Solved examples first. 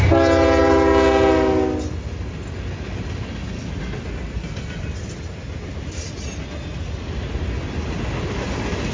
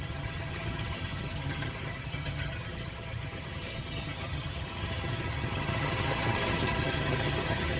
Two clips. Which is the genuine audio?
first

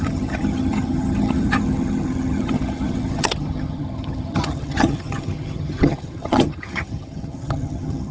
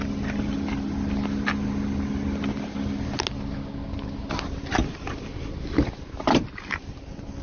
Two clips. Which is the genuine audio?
second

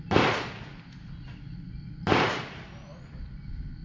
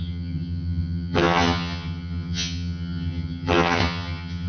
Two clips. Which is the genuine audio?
first